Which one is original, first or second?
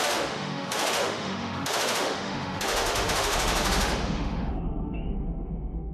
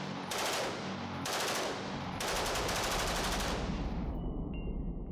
second